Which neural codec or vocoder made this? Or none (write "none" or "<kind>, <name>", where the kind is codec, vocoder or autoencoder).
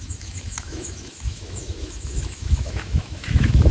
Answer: autoencoder, DAC-VAE